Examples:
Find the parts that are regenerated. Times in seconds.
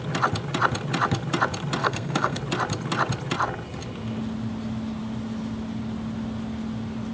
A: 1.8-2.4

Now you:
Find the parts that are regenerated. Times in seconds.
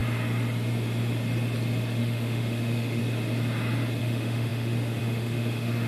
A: 2.0-3.0; 4.0-5.9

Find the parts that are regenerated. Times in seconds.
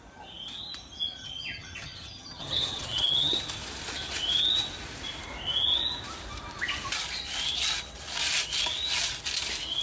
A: 1.2-3.4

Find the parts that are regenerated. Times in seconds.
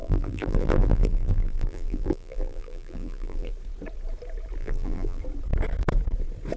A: 0.0-3.5; 4.6-5.2